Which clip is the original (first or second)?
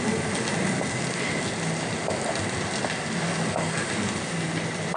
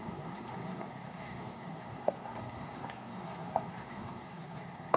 first